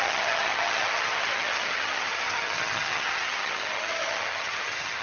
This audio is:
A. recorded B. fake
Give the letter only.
B